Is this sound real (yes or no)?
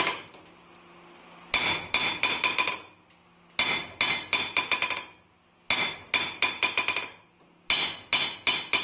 yes